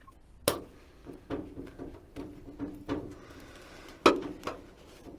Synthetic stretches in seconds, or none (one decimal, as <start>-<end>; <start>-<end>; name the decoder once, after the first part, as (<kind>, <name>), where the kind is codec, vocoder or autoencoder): none